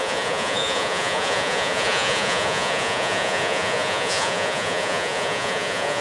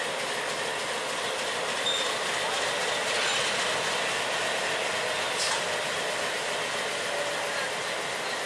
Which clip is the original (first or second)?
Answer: second